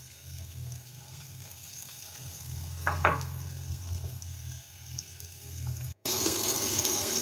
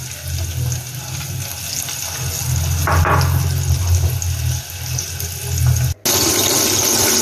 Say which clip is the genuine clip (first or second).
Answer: second